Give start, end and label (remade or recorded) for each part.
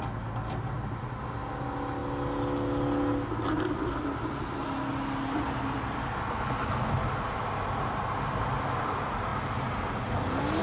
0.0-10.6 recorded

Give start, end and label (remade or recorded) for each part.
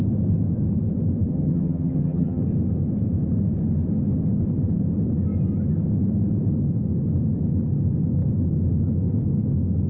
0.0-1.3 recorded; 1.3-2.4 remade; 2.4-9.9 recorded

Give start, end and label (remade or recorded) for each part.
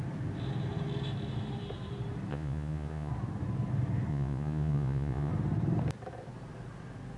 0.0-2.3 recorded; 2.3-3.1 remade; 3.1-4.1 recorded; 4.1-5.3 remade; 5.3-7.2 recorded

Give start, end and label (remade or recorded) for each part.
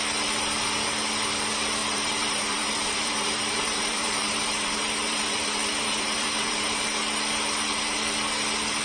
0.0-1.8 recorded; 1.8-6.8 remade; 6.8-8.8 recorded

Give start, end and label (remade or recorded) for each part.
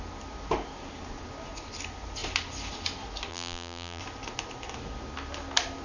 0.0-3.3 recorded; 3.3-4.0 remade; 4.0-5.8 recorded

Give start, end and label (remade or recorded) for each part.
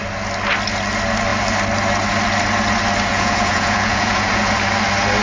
0.0-3.1 recorded; 3.1-4.4 remade; 4.4-5.2 recorded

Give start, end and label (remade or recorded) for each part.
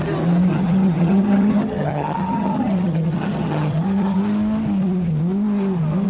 0.0-0.5 recorded; 0.5-4.2 remade; 4.2-6.1 recorded